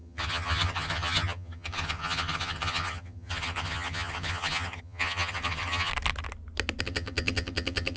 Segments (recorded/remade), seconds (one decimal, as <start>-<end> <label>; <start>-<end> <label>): 0.0-5.9 remade; 5.9-6.8 recorded; 6.8-8.0 remade